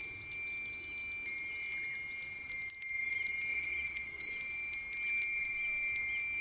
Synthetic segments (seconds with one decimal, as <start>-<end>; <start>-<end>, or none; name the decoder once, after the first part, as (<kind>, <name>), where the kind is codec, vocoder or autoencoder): 3.5-4.3 (vocoder, Vocos)